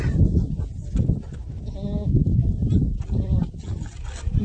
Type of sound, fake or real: real